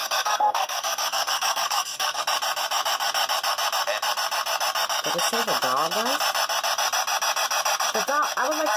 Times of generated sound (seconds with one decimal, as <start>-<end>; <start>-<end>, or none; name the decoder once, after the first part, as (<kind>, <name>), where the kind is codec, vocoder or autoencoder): 0.0-2.2 (codec, SNAC)